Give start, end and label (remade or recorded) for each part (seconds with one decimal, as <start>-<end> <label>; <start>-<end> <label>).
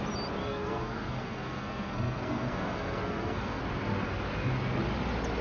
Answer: 0.0-0.4 recorded; 0.4-3.6 remade; 3.6-5.4 recorded